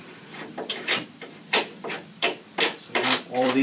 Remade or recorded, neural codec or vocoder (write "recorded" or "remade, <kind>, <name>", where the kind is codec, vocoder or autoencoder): remade, vocoder, BigVGAN v2